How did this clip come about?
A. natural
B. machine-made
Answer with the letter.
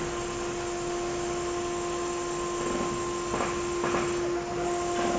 A